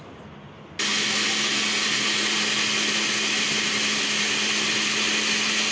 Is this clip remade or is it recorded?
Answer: recorded